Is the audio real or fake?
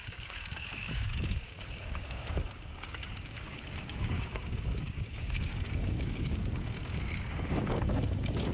fake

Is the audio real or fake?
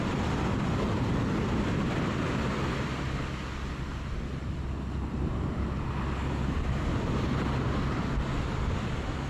real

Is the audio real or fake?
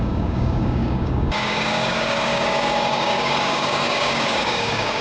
fake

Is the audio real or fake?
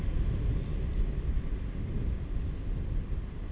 real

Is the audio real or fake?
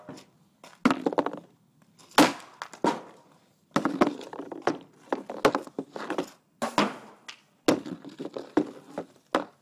real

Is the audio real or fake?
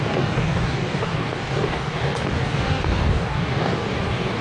fake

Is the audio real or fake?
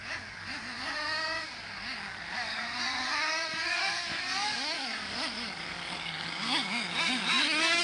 fake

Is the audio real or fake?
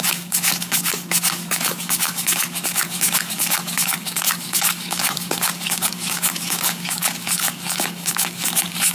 fake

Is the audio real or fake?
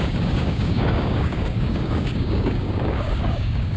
fake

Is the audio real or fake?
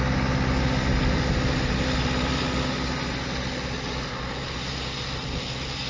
real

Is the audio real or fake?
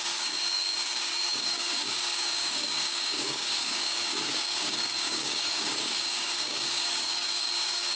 fake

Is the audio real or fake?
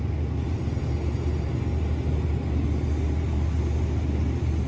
real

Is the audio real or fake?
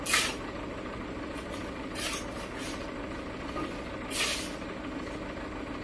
real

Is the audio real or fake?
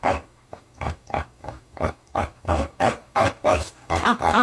fake